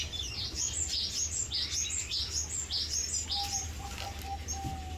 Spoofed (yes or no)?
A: no